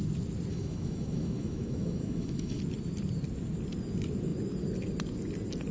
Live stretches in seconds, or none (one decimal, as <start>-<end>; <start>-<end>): 0.0-0.5; 2.6-5.7